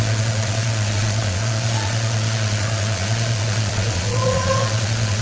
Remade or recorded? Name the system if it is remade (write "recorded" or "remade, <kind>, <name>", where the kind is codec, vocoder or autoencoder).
remade, vocoder, Vocos